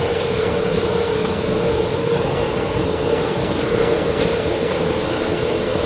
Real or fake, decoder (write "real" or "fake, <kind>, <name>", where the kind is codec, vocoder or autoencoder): fake, codec, SNAC